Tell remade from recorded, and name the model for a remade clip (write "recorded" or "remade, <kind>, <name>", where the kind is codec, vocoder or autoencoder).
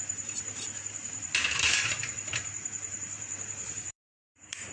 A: remade, vocoder, BigVGAN v2